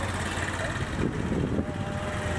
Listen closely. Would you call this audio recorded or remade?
recorded